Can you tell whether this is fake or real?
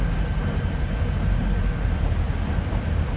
fake